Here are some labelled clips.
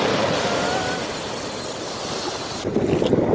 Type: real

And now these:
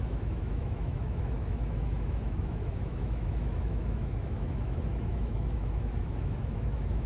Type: fake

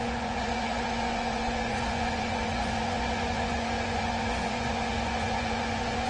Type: fake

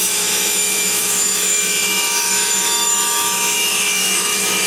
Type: fake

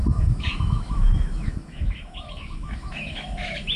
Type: fake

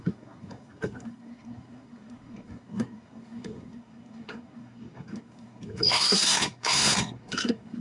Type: fake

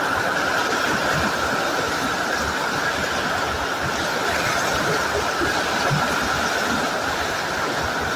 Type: real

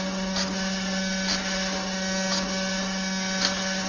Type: real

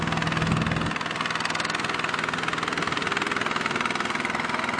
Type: real